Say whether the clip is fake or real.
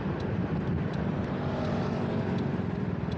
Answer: fake